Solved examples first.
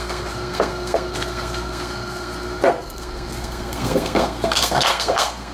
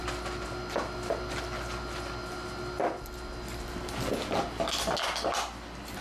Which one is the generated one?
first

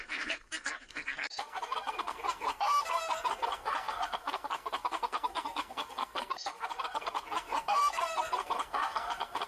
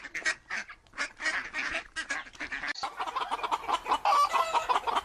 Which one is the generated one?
first